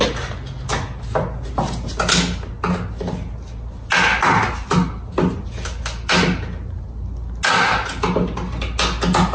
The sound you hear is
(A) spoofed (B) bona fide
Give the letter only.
B